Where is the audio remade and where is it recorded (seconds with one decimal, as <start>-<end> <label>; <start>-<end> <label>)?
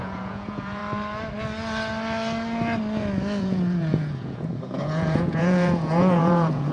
0.0-0.8 remade; 0.8-3.4 recorded; 3.4-6.7 remade